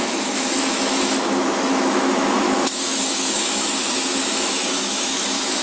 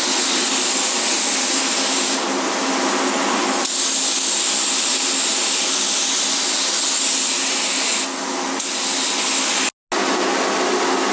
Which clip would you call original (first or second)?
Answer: second